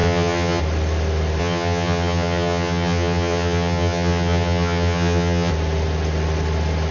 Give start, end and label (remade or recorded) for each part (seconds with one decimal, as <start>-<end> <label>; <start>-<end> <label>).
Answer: 0.0-0.6 remade; 0.6-1.4 recorded; 1.4-5.5 remade; 5.5-6.9 recorded